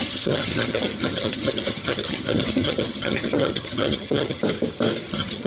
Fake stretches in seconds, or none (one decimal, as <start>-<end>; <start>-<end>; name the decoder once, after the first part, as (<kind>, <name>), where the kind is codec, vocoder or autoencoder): 0.0-4.4 (vocoder, HiFi-GAN); 5.1-5.5